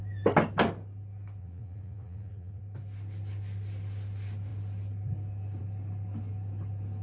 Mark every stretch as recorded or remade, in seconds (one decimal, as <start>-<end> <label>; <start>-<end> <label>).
0.0-1.4 recorded; 1.4-2.6 remade; 2.6-7.0 recorded